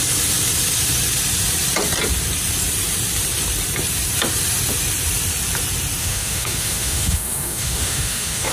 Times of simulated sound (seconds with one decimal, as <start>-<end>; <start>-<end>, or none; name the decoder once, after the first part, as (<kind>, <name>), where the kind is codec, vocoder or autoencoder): 6.0-8.5 (autoencoder, DAC-VAE)